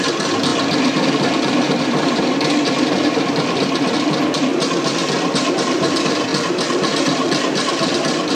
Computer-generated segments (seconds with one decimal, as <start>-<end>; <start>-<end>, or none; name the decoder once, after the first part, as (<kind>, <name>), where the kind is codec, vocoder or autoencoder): 0.0-4.5 (vocoder, BigVGAN v2); 5.5-8.3